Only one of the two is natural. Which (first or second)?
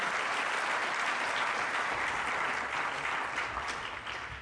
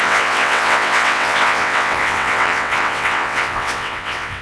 first